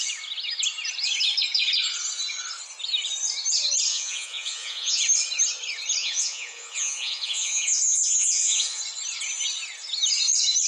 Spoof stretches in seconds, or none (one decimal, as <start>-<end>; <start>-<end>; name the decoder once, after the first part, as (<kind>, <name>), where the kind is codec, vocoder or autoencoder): 3.9-5.0 (vocoder, Vocos); 6.0-8.8